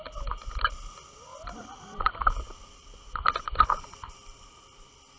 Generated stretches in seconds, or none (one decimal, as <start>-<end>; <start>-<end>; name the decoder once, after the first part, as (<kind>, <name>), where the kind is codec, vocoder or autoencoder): none

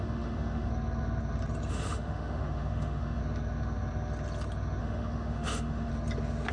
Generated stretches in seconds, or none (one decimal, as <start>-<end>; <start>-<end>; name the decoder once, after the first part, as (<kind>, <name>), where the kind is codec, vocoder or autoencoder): 0.0-0.7 (autoencoder, DAC-VAE); 1.7-3.2; 4.8-5.9

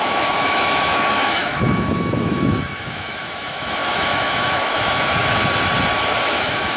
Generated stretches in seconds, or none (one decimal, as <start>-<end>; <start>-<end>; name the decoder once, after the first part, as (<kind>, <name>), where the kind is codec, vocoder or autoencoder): 0.0-5.4 (autoencoder, DAC-VAE); 6.2-6.8